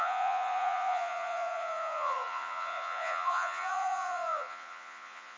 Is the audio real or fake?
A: fake